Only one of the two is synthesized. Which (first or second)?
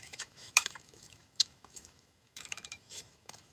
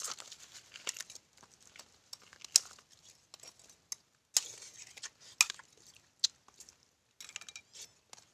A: first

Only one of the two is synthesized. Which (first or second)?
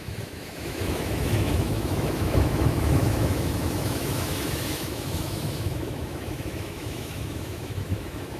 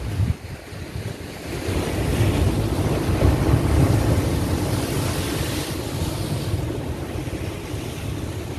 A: first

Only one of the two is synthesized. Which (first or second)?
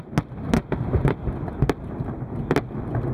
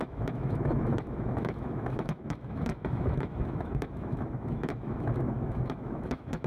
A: second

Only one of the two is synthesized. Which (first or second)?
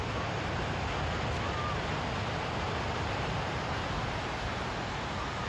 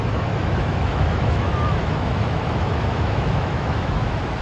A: second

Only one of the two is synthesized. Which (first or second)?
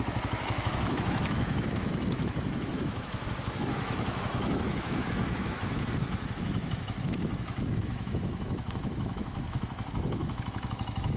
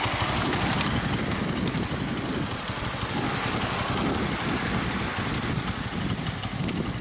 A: first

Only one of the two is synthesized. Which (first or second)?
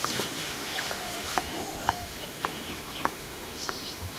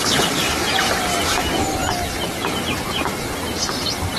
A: first